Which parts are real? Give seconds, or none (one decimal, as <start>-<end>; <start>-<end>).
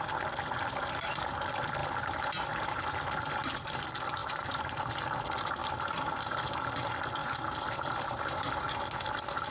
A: 0.0-1.8; 2.8-4.2; 4.8-5.6; 6.2-7.2; 8.8-9.5